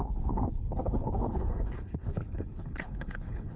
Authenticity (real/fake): fake